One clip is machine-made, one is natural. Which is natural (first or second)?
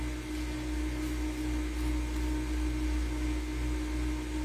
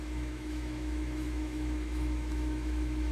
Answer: first